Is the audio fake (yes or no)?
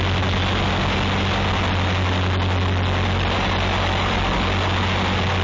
no